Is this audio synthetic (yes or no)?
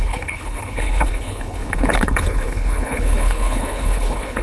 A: yes